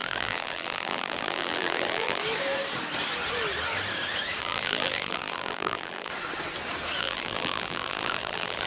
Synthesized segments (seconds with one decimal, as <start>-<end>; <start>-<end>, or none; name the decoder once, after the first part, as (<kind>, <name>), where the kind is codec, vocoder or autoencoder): 0.0-2.2 (vocoder, BigVGAN v2); 4.4-6.1; 7.0-8.7